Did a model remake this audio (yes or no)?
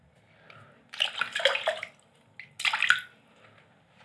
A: no